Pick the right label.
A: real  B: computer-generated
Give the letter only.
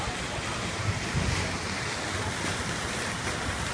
A